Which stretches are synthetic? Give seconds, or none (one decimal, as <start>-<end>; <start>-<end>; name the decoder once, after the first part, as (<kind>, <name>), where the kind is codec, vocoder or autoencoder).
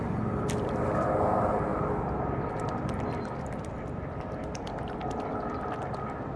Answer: none